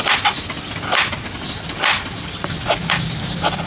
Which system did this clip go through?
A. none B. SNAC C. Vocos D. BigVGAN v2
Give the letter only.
A